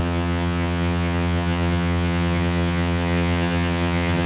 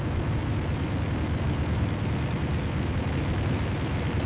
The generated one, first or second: first